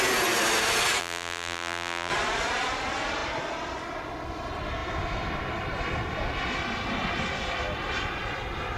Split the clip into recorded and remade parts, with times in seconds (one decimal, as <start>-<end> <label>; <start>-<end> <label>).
0.0-1.0 recorded; 1.0-2.1 remade; 2.1-8.8 recorded